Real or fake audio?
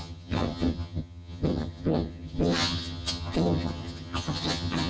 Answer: fake